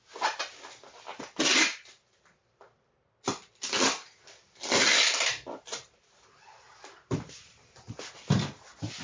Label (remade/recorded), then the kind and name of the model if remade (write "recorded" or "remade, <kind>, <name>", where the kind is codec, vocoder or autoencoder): recorded